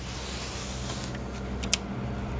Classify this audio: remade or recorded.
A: recorded